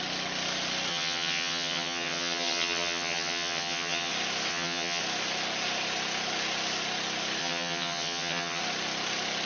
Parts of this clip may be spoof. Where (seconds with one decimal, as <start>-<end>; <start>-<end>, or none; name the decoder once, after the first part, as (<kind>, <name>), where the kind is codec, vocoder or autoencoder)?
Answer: 0.9-4.1 (vocoder, HiFi-GAN); 4.5-5.0; 7.4-8.6